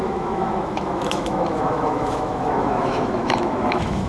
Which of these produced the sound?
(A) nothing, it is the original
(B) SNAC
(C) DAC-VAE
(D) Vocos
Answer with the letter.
C